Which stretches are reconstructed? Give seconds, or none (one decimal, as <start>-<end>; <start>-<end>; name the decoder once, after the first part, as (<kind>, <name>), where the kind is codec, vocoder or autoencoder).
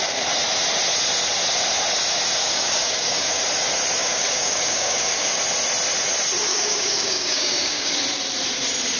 2.4-3.4 (codec, DAC); 4.0-5.4; 6.5-8.0